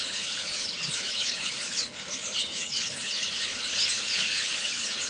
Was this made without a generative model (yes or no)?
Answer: no